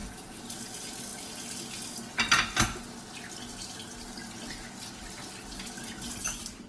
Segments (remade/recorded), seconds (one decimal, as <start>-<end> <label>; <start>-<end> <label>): 0.0-6.7 recorded